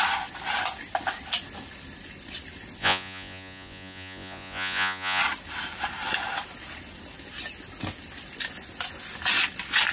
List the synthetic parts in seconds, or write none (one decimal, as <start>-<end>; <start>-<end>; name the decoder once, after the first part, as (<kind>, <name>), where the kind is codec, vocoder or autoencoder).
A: 2.8-5.2 (vocoder, Vocos)